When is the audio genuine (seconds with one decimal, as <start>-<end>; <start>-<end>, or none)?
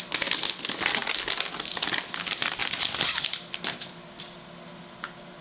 0.0-5.4